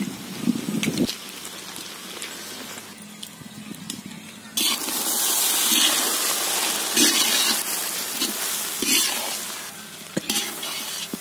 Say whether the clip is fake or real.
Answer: real